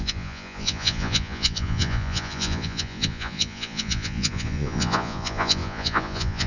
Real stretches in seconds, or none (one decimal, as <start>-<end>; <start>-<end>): none